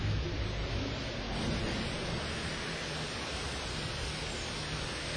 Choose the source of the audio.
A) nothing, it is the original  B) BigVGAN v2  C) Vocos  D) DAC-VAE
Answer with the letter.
A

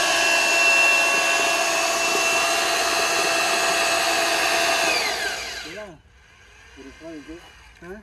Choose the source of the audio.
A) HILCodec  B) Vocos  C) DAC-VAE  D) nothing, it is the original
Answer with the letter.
D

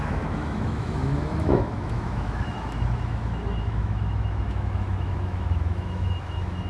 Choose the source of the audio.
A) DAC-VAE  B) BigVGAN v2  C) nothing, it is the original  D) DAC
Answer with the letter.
A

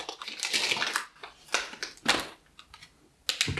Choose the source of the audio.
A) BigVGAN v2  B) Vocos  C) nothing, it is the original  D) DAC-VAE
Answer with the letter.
C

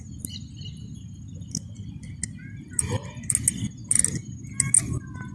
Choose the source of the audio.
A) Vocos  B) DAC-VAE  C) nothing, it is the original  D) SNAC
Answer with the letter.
C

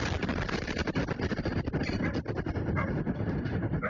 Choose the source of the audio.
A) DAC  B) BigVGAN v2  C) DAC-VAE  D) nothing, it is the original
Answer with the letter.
D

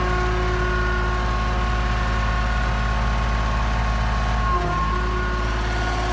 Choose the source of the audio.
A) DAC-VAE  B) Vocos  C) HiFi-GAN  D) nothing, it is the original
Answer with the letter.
D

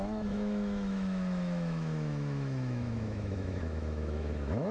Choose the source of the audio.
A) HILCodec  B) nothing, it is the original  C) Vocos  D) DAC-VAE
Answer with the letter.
D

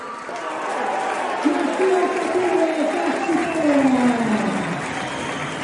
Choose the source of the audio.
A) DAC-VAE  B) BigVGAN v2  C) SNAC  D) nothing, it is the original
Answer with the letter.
D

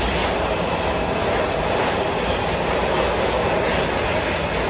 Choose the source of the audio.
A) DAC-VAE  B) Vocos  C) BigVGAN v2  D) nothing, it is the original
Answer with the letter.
D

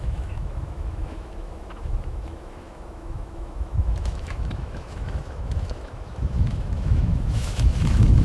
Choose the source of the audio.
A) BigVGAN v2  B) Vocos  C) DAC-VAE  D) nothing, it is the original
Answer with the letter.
C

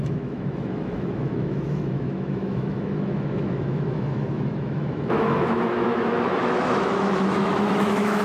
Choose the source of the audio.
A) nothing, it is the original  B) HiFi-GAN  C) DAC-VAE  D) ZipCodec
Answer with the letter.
C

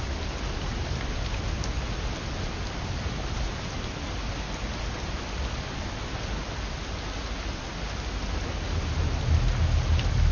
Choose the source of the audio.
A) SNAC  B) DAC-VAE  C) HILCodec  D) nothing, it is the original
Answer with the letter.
D